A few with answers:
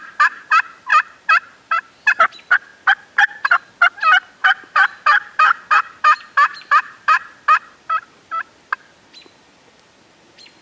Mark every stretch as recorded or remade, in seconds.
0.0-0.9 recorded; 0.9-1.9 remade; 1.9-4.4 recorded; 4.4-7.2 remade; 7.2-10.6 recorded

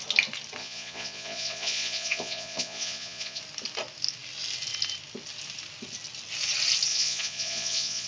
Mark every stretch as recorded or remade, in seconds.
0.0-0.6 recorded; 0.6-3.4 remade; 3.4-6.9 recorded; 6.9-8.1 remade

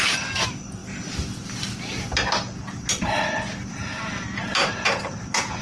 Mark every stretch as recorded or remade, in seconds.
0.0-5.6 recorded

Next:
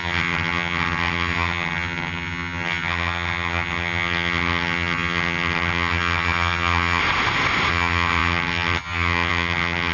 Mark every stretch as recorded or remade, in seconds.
0.0-7.0 remade; 7.0-7.7 recorded; 7.7-9.9 remade

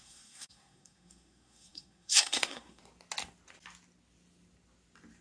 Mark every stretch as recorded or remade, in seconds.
0.0-2.8 remade; 2.8-5.2 recorded

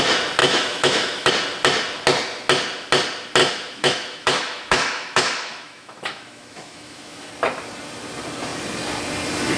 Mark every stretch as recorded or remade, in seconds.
0.0-0.4 recorded; 0.4-1.3 remade; 1.3-3.4 recorded; 3.4-7.3 remade; 7.3-9.6 recorded